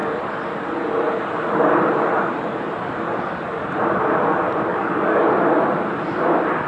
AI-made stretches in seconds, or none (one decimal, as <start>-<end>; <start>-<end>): 4.7-5.3